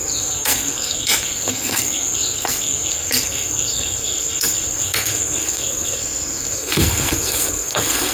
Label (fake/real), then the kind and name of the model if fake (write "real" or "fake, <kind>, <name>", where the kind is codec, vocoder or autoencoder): fake, codec, SNAC